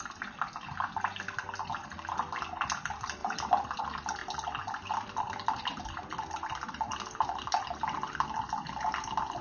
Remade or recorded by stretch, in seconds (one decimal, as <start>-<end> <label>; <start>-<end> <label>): 0.0-1.8 recorded; 1.8-2.5 remade; 2.5-3.2 recorded; 3.2-3.8 remade; 3.8-4.2 recorded; 4.2-7.4 remade; 7.4-9.4 recorded

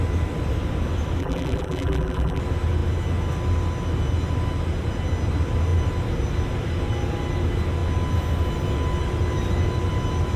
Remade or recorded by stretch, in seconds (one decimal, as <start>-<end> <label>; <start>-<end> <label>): 0.0-1.2 recorded; 1.2-2.4 remade; 2.4-10.4 recorded

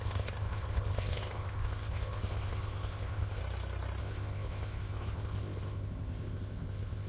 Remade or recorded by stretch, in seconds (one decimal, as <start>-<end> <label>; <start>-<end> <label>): 0.0-3.4 remade; 3.4-4.0 recorded; 4.0-7.1 remade

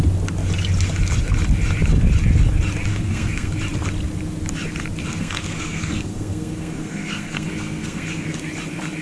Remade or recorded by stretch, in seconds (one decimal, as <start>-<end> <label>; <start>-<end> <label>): 0.0-2.9 recorded; 2.9-3.5 remade; 3.5-5.1 recorded; 5.1-8.4 remade; 8.4-9.0 recorded

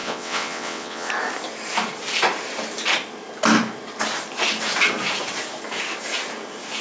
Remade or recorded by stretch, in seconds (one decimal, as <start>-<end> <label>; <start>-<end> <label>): 0.0-1.1 remade; 1.1-6.8 recorded

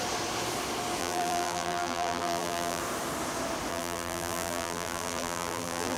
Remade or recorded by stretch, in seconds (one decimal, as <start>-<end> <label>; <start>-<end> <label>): 0.0-1.0 recorded; 1.0-2.8 remade; 2.8-3.7 recorded; 3.7-6.0 remade

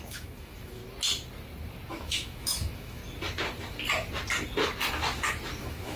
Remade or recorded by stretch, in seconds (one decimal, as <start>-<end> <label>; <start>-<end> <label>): 0.0-0.8 remade; 0.8-1.9 recorded; 1.9-3.0 remade; 3.0-5.6 recorded; 5.6-6.0 remade

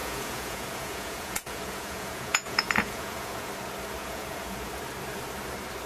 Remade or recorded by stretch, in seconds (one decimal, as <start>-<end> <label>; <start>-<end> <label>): 0.0-3.5 remade; 3.5-4.0 recorded; 4.0-4.7 remade; 4.7-5.9 recorded